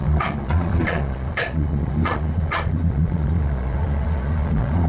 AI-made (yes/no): yes